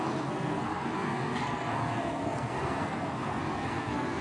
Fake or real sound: fake